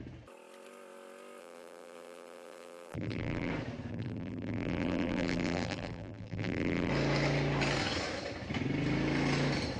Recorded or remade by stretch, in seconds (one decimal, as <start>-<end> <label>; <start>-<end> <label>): 0.0-1.4 recorded; 1.4-3.5 remade; 3.5-3.9 recorded; 3.9-6.9 remade; 6.9-9.8 recorded